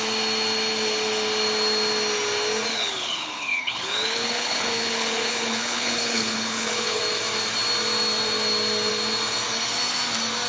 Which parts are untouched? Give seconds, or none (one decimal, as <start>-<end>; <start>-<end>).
0.0-2.7; 7.0-10.5